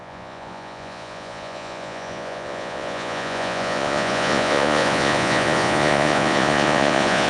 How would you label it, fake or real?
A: fake